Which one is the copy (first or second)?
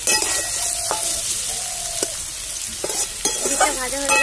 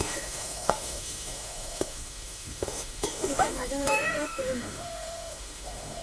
second